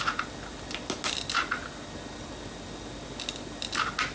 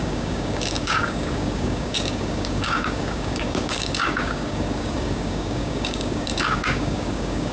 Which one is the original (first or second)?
first